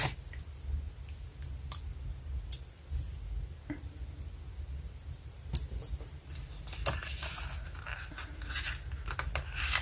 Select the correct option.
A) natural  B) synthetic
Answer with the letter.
A